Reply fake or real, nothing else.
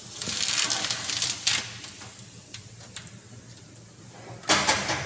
real